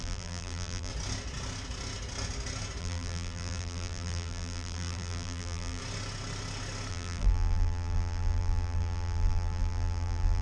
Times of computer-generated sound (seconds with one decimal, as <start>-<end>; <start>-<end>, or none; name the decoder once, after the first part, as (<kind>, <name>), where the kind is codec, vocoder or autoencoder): 0.0-0.9 (vocoder, BigVGAN v2); 2.8-5.8; 6.9-10.4